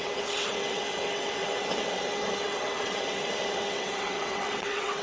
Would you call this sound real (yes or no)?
no